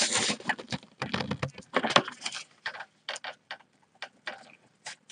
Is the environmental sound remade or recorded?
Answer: recorded